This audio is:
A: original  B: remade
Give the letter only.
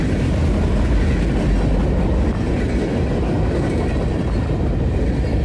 A